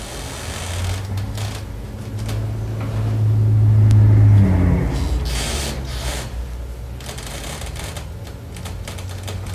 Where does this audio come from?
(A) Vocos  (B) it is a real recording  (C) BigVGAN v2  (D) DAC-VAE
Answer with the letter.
B